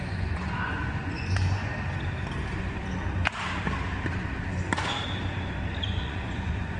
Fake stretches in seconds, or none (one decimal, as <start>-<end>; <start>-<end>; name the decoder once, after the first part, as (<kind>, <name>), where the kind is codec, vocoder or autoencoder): 0.0-1.7 (vocoder, Vocos); 5.8-6.8